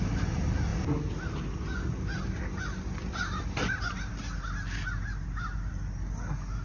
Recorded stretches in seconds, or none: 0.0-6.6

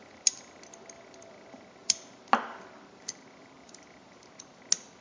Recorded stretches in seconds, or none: 0.0-5.0

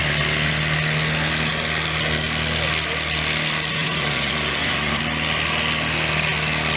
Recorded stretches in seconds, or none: 0.0-3.7; 5.0-6.8

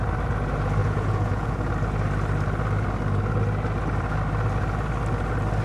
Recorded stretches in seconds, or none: 0.0-0.8; 1.5-5.6

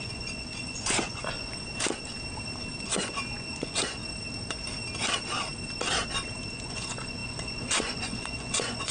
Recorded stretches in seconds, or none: 1.5-2.8; 4.0-6.5

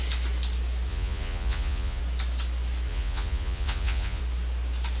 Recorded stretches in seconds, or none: 0.0-0.9; 2.0-2.9; 4.2-5.0

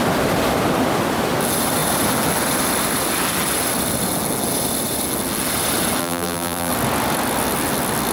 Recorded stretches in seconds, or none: 0.0-6.0; 6.7-8.1

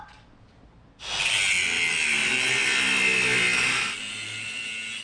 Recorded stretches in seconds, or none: 0.0-5.0